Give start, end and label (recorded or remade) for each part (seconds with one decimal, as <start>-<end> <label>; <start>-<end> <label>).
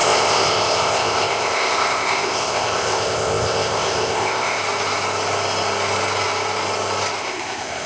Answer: 0.0-4.6 remade; 4.6-7.2 recorded; 7.2-7.9 remade